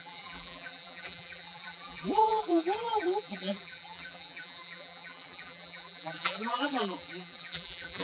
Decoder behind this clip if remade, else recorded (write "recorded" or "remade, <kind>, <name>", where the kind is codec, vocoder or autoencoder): remade, vocoder, BigVGAN v2